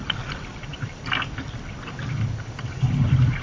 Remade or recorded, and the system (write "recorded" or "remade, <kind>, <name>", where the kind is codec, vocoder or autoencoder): recorded